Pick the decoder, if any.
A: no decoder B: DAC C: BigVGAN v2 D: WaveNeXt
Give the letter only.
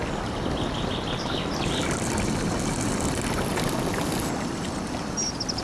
A